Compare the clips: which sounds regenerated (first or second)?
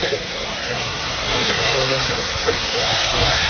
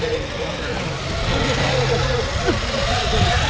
first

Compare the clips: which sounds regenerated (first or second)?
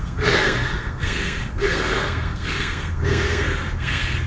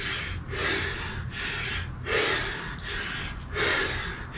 first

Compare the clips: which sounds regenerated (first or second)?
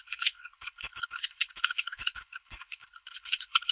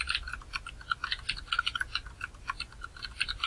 first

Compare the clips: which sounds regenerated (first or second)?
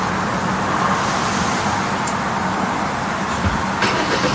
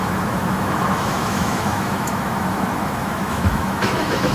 second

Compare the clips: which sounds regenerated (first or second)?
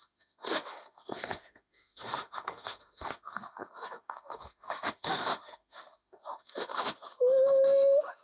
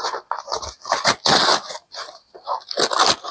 first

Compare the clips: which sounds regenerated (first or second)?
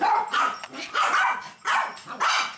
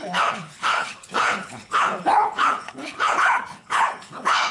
second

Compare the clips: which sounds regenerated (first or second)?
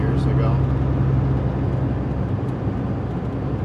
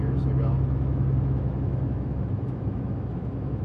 second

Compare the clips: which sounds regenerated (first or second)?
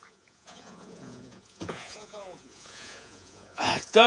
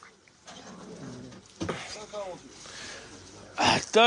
first